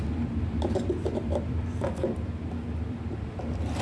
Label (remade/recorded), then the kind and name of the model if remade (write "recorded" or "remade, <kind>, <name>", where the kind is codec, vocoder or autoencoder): remade, vocoder, BigVGAN v2